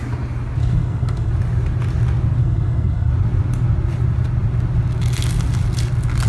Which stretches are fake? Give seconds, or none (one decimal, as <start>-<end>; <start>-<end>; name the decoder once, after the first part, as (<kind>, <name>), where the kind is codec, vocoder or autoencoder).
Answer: 0.6-1.3 (codec, SNAC); 2.4-3.1